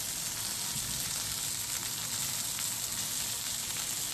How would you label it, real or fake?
real